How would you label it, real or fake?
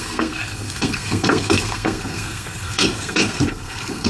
fake